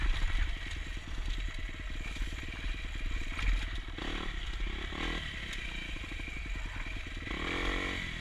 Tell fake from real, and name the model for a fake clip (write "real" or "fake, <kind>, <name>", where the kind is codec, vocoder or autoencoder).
real